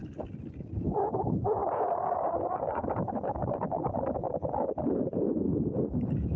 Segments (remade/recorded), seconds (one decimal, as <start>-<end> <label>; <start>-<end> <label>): 0.0-0.9 recorded; 0.9-1.6 remade; 1.6-2.4 recorded; 2.4-3.4 remade; 3.4-6.0 recorded; 6.0-6.4 remade